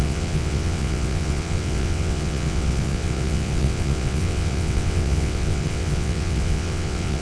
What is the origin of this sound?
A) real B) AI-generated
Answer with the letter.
B